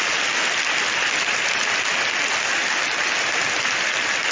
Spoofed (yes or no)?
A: no